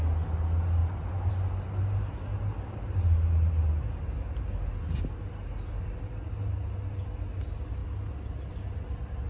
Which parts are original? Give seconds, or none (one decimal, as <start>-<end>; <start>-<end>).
0.0-9.3